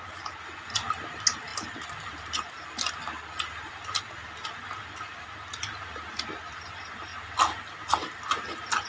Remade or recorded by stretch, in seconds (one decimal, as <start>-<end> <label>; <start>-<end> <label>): 0.0-8.9 recorded

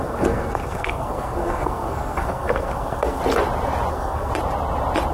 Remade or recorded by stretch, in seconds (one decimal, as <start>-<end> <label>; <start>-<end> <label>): 0.0-3.2 remade; 3.2-3.9 recorded; 3.9-4.3 remade; 4.3-5.1 recorded

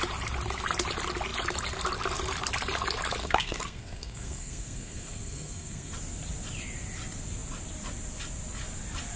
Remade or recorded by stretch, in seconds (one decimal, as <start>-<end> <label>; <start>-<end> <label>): 0.0-3.2 recorded; 3.2-5.9 remade; 5.9-9.2 recorded

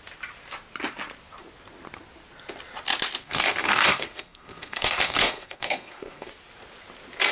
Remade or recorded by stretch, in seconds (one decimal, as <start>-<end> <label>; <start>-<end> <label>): 0.0-3.2 recorded; 3.2-6.3 remade; 6.3-7.3 recorded